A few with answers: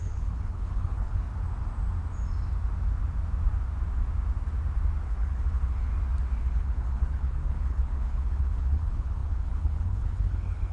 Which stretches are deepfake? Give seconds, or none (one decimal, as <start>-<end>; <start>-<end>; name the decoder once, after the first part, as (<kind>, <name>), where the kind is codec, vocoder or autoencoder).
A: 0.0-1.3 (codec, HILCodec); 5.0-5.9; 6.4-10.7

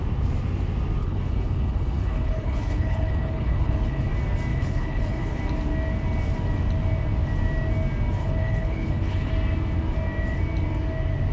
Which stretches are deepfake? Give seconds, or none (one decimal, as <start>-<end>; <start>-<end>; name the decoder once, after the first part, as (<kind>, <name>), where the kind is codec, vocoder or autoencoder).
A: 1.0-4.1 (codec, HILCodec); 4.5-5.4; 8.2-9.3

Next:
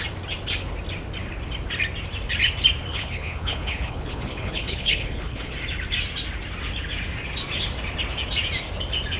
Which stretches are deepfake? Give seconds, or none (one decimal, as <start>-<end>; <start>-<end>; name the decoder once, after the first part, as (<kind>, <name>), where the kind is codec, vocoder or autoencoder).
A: 2.9-5.5 (codec, HILCodec)

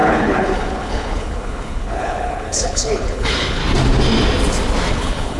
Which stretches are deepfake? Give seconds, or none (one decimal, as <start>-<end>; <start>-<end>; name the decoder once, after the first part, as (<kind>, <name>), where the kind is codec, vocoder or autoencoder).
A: 0.0-3.6 (codec, HILCodec); 4.9-5.4

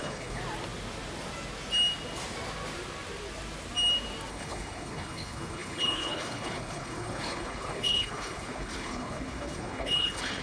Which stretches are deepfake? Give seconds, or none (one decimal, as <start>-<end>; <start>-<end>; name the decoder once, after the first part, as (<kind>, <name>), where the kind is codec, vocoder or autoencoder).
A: 0.0-0.4 (codec, HILCodec); 4.3-10.4